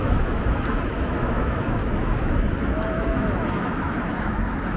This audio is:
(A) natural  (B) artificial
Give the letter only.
B